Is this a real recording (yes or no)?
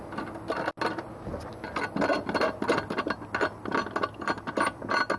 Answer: yes